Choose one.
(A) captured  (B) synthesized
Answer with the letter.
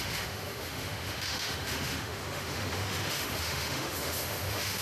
B